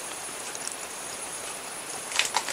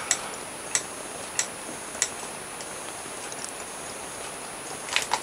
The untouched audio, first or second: second